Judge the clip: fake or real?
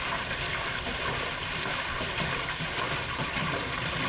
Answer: real